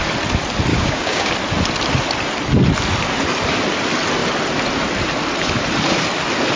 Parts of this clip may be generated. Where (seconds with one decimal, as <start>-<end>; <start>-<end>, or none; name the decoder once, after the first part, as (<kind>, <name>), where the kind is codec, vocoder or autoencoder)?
0.7-1.3 (codec, DAC)